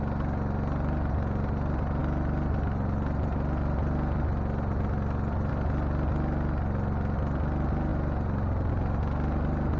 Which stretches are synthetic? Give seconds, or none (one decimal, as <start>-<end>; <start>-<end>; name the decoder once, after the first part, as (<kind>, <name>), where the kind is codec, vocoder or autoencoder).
none